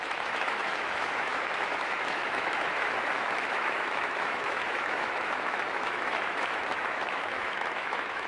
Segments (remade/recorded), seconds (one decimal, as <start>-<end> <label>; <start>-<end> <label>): 0.0-8.3 remade